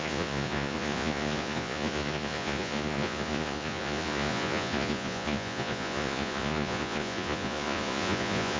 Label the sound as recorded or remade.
remade